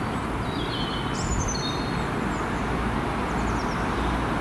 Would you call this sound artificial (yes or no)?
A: no